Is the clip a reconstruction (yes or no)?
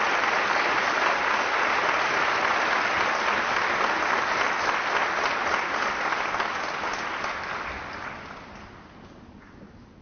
no